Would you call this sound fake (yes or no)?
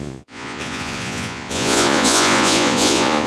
yes